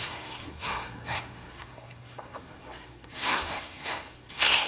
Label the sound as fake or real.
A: fake